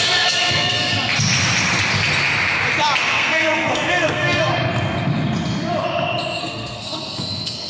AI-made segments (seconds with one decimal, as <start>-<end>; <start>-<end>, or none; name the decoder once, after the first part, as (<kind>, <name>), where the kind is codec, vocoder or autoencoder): 0.0-0.9 (codec, SNAC); 3.0-4.5; 6.4-7.7